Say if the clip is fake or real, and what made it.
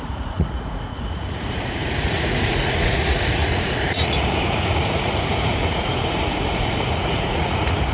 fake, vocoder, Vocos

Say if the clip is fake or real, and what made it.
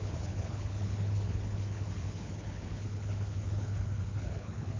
fake, codec, HILCodec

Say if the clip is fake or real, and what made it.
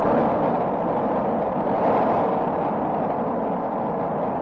fake, vocoder, BigVGAN v2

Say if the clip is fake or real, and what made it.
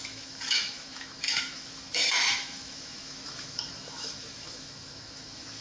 fake, autoencoder, DAC-VAE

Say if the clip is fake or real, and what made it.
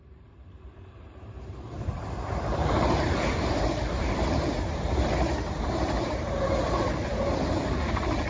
fake, vocoder, BigVGAN v2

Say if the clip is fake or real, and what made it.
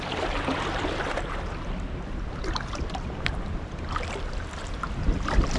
real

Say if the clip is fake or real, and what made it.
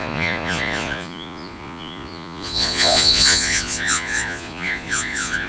fake, vocoder, Vocos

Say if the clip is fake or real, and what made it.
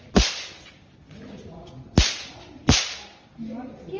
real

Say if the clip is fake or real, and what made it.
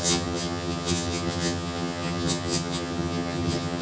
fake, vocoder, HiFi-GAN